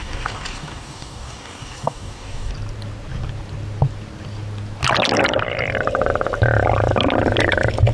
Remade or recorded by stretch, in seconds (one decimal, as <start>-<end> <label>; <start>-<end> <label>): 0.0-2.5 remade; 2.5-7.9 recorded